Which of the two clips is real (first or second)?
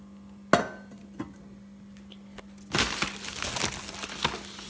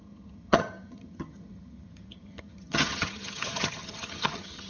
first